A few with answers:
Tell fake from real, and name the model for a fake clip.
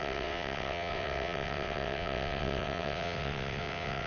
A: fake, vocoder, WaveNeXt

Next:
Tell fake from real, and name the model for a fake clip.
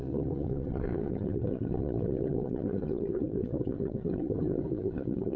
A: fake, vocoder, WaveNeXt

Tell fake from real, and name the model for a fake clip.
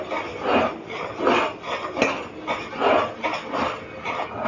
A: real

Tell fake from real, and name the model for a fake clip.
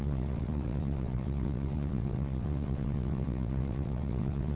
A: fake, vocoder, WaveNeXt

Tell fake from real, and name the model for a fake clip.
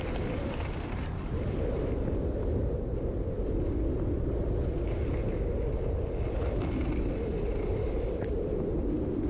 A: real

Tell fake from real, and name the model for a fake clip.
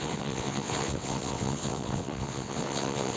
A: fake, vocoder, WaveNeXt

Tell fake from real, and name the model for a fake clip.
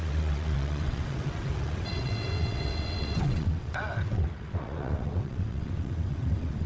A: fake, vocoder, WaveNeXt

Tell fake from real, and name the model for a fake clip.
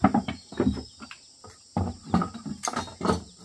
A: real